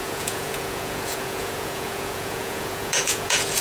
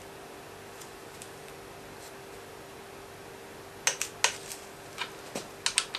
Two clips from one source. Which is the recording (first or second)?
second